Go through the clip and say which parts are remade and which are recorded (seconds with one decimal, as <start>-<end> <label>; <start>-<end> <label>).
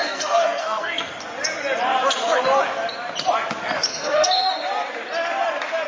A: 0.0-1.1 remade; 1.1-3.9 recorded; 3.9-4.5 remade; 4.5-5.9 recorded